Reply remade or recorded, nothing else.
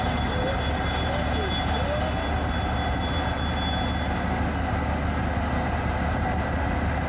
recorded